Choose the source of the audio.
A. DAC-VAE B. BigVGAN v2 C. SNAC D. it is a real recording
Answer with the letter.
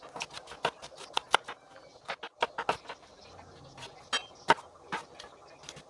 D